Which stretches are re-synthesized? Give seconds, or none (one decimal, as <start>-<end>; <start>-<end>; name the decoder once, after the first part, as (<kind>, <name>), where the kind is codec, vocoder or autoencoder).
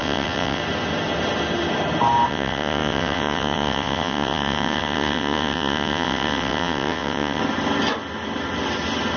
0.0-0.6 (vocoder, WaveNeXt); 2.3-7.4